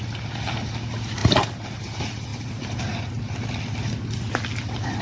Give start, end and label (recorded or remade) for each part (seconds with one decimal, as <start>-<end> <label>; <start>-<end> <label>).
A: 0.0-5.0 recorded